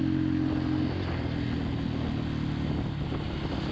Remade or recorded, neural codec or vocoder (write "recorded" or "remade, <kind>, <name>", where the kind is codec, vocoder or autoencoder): recorded